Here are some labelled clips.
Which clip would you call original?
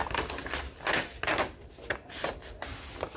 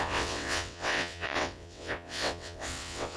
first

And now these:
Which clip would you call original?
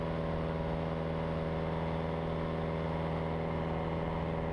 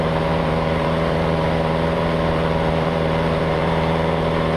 first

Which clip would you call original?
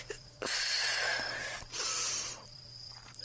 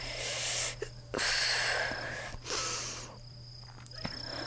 second